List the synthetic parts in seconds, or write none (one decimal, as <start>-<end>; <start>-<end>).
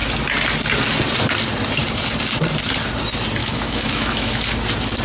3.4-4.4